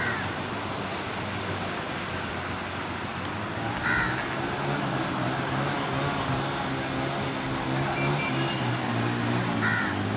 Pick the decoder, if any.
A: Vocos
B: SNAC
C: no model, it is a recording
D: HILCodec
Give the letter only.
C